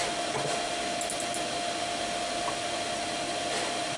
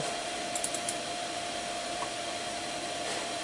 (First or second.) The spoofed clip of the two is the second